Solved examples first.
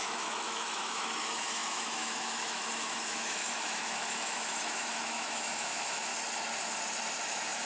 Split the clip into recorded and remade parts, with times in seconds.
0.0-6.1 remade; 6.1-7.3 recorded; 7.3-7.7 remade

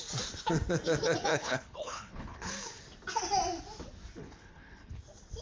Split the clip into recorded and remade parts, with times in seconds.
0.0-1.3 recorded; 1.3-2.8 remade; 2.8-4.2 recorded; 4.2-5.0 remade; 5.0-5.4 recorded

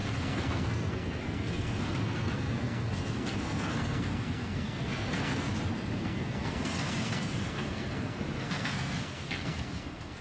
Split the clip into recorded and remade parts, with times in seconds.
0.0-5.5 remade; 5.5-6.0 recorded; 6.0-10.2 remade